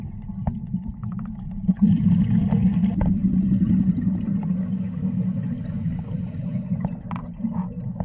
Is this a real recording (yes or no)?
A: yes